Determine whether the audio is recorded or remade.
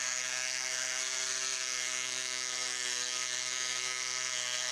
remade